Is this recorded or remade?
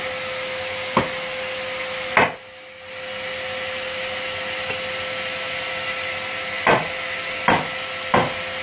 recorded